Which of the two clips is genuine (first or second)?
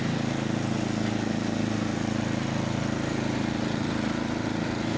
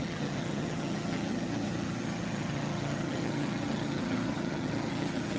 first